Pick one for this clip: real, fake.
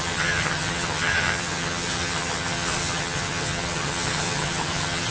fake